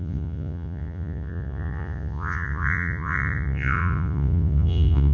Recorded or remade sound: remade